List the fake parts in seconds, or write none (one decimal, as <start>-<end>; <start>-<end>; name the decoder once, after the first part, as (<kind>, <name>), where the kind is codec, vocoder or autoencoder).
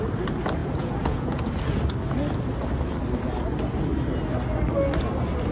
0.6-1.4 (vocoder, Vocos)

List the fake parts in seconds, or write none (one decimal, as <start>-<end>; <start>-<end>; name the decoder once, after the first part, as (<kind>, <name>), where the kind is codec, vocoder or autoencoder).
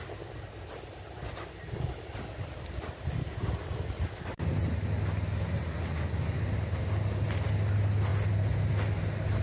none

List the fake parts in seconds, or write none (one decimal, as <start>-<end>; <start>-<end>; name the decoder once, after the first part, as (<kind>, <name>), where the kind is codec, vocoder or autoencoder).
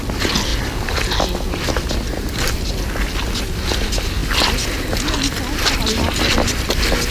none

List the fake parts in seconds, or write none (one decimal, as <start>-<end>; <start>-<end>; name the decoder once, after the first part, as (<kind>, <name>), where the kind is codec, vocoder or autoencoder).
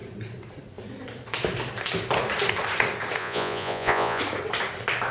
3.2-4.2 (vocoder, Vocos)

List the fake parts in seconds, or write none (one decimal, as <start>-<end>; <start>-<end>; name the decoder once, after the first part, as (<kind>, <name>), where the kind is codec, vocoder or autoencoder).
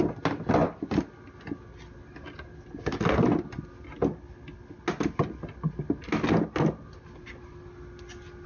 none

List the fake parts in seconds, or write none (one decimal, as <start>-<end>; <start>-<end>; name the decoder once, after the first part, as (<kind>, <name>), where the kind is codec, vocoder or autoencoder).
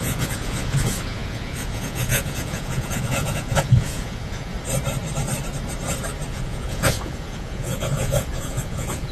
0.0-4.5 (vocoder, Vocos); 6.3-9.1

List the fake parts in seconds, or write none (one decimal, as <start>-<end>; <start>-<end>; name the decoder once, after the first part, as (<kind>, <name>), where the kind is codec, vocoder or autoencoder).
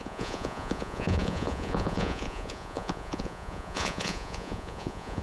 0.0-5.2 (vocoder, Vocos)